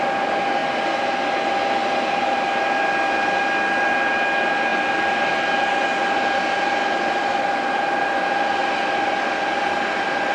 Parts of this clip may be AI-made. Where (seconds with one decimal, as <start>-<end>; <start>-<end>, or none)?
none